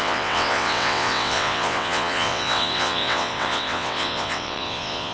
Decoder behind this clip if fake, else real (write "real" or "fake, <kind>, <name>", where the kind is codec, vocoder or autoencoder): fake, vocoder, WaveNeXt